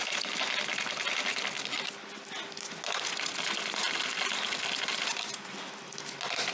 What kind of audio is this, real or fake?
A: real